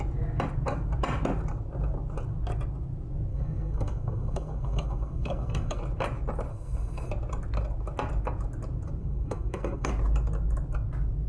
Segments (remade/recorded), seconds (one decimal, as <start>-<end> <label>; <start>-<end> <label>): 0.0-3.3 recorded; 3.3-5.8 remade; 5.8-6.5 recorded; 6.5-7.1 remade; 7.1-9.0 recorded; 9.0-9.9 remade; 9.9-11.3 recorded